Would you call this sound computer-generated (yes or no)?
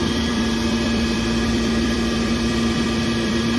yes